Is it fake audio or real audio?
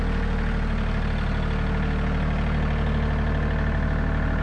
real